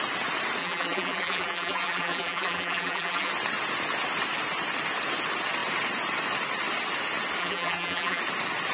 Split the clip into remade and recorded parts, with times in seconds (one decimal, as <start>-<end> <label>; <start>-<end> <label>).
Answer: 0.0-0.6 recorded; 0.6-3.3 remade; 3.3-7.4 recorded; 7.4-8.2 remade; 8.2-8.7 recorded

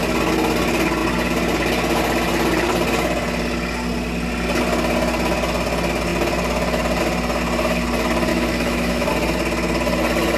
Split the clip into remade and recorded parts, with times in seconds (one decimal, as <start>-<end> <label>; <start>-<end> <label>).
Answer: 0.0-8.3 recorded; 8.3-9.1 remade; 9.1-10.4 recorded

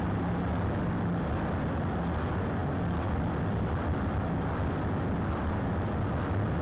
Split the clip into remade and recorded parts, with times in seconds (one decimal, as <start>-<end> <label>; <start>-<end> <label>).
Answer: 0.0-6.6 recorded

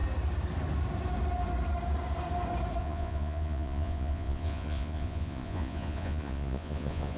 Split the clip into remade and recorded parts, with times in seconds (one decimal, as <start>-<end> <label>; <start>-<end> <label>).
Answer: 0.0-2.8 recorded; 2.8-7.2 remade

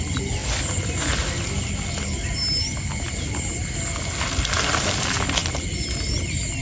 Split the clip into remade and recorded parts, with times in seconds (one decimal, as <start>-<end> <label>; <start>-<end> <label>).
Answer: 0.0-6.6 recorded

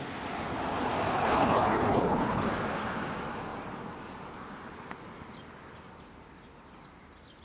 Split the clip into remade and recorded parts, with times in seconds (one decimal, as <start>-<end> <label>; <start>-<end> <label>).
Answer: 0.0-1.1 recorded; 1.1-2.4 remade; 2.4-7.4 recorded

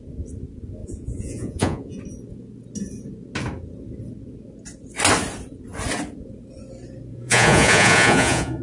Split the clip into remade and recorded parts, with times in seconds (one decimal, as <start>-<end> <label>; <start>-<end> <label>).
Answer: 0.0-0.8 recorded; 0.8-2.0 remade; 2.0-7.1 recorded; 7.1-8.6 remade